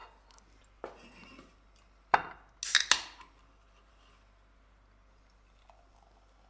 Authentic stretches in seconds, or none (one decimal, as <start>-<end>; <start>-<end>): 0.0-6.5